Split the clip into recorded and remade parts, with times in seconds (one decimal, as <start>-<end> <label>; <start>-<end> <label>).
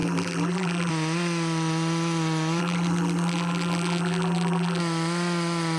0.0-0.9 remade; 0.9-2.6 recorded; 2.6-4.8 remade; 4.8-5.8 recorded